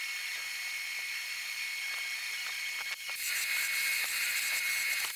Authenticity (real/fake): real